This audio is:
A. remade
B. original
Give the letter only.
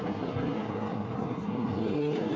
A